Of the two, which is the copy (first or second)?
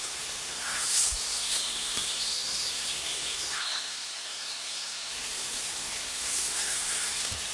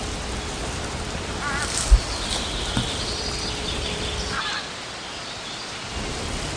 first